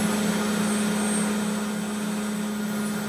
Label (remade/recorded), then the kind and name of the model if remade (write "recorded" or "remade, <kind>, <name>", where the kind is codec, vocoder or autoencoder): recorded